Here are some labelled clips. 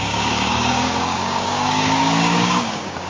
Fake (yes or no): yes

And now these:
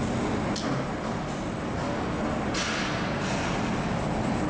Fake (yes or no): no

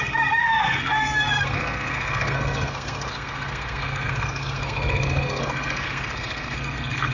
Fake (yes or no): yes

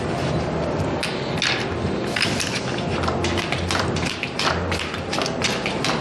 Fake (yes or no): no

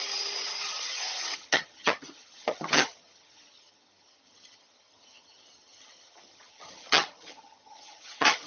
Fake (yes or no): yes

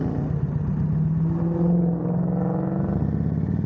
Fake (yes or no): no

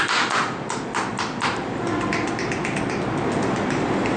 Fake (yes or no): no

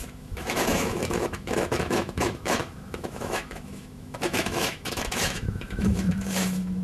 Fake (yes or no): yes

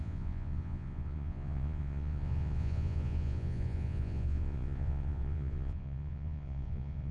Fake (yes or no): yes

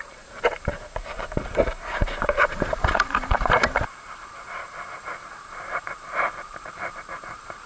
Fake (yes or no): yes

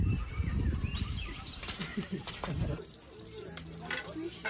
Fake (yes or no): yes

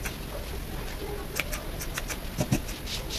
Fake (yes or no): no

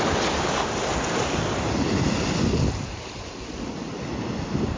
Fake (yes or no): no